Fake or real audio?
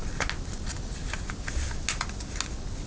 real